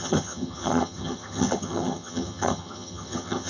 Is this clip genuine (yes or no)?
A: no